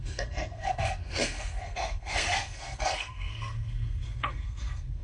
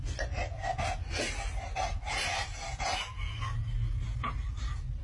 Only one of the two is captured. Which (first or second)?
second